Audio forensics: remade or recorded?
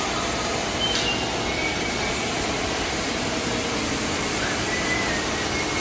recorded